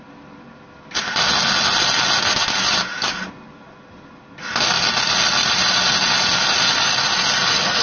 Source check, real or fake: real